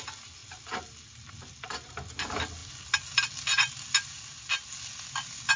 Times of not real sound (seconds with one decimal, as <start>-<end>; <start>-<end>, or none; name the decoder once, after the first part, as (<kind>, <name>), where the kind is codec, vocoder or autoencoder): none